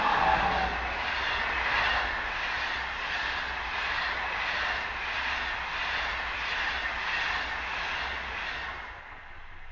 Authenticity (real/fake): real